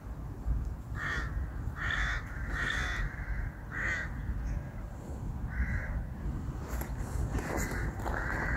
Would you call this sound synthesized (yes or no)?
no